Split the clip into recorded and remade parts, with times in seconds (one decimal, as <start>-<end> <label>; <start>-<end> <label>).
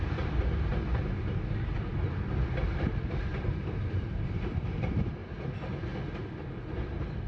0.0-0.7 remade; 0.7-2.7 recorded; 2.7-5.2 remade; 5.2-7.3 recorded